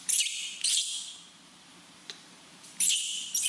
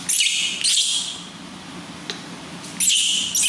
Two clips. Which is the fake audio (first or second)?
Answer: first